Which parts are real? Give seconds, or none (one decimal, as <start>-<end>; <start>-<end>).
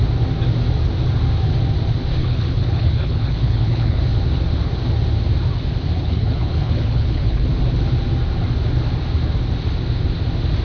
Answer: 0.0-2.2; 4.0-6.0; 7.5-10.6